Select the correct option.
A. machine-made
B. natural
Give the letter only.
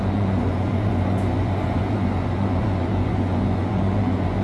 A